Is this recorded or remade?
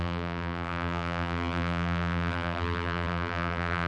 remade